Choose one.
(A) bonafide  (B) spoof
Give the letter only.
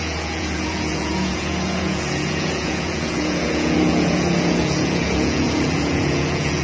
B